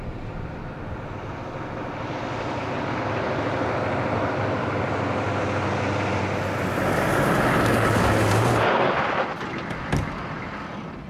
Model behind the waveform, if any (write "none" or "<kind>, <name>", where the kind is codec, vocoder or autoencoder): none